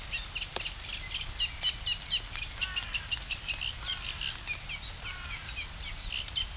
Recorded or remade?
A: recorded